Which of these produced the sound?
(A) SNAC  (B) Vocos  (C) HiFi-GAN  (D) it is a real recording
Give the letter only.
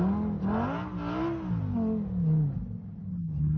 D